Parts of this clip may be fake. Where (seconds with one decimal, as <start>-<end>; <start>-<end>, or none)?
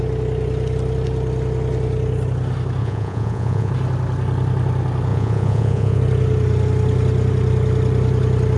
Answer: 2.8-3.7; 5.1-6.0